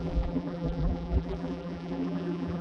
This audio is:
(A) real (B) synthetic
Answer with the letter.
B